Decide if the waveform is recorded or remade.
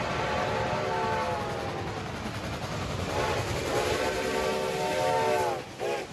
recorded